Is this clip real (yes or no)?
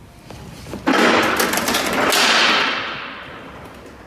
yes